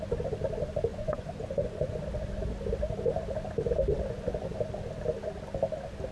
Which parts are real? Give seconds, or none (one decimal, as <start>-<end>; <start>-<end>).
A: 0.0-0.9; 2.0-3.9; 4.6-6.1